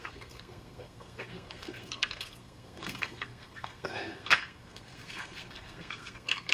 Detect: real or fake fake